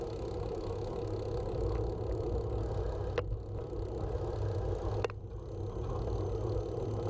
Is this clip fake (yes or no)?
no